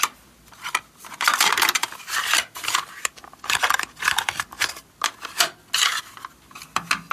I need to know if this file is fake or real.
real